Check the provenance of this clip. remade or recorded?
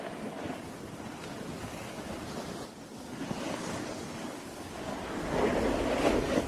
recorded